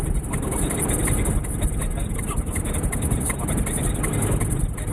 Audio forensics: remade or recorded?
recorded